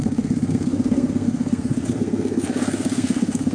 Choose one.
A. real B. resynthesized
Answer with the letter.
B